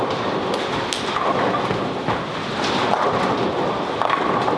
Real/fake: real